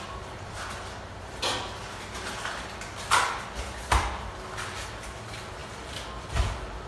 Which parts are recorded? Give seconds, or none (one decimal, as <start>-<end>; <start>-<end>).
0.0-6.9